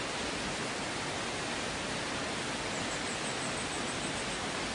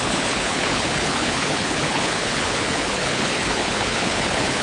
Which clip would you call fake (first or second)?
second